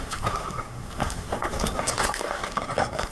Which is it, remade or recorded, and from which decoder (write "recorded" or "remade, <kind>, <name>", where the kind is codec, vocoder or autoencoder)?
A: remade, codec, SNAC